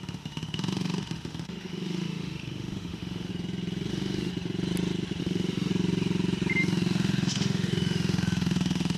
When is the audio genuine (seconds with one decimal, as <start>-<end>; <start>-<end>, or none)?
3.3-3.9; 4.3-5.2; 5.7-6.6